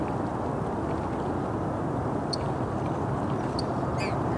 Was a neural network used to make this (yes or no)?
no